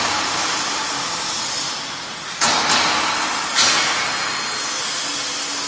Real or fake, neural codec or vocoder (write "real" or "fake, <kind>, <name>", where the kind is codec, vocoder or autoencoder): real